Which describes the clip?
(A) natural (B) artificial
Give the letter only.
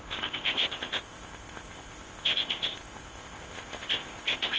B